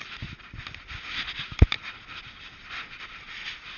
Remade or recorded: recorded